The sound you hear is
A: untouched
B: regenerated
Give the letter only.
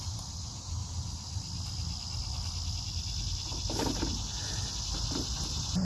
A